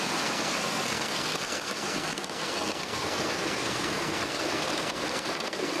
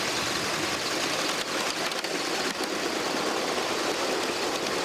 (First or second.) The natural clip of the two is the second